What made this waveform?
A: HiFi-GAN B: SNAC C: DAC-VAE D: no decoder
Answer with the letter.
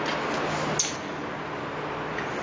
D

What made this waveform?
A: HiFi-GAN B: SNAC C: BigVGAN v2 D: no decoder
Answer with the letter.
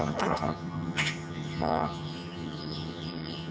A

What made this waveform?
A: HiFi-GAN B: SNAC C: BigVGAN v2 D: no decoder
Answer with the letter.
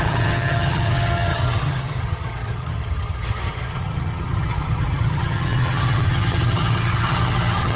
A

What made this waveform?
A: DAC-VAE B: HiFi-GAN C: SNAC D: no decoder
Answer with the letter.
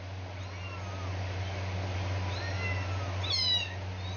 D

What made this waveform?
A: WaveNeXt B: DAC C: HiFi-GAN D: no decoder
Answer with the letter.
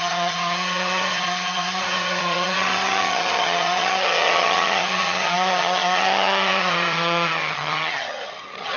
C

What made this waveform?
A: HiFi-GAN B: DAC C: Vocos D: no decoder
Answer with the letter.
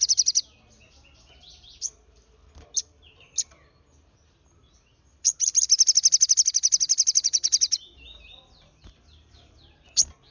D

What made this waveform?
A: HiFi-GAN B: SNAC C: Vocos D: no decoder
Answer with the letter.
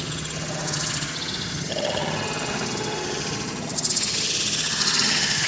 A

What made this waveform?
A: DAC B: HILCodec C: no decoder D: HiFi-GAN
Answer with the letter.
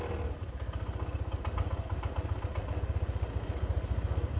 C